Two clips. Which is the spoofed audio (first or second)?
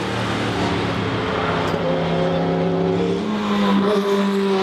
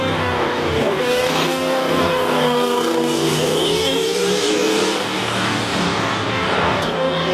second